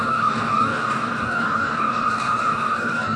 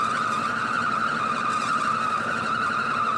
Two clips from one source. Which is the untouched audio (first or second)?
second